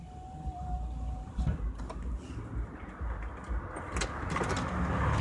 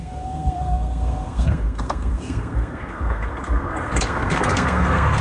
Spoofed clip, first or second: second